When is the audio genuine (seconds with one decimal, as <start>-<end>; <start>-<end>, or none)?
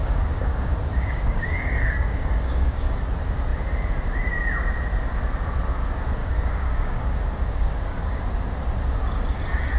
3.1-6.2; 8.2-9.8